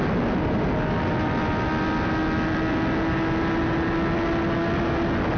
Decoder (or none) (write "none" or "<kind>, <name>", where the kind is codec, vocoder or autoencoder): none